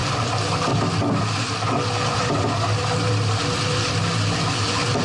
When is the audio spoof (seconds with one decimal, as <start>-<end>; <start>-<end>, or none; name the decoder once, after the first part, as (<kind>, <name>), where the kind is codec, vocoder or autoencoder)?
none